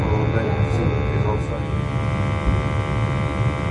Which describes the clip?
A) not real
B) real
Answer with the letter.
B